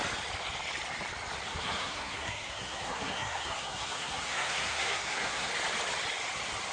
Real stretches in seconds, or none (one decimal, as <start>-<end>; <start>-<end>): 0.0-1.5; 5.5-6.7